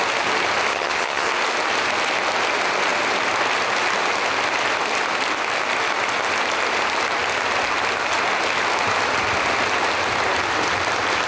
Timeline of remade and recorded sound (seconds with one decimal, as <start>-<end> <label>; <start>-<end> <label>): 0.0-0.7 recorded; 0.7-1.3 remade; 1.3-11.3 recorded